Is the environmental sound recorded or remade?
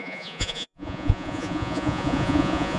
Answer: remade